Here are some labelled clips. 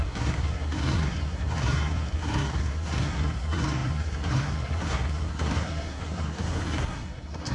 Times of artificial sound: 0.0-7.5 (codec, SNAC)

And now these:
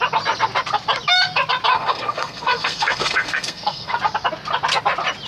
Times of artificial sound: 1.7-4.0 (codec, SNAC)